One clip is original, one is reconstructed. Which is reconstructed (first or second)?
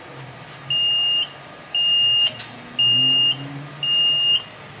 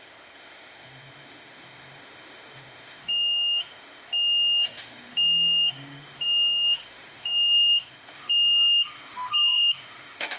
second